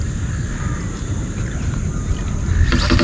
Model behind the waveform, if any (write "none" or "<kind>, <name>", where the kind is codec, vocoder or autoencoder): none